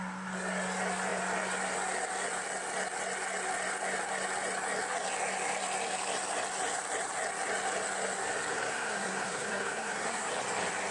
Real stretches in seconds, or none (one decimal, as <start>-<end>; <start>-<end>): 0.0-8.5; 10.3-10.9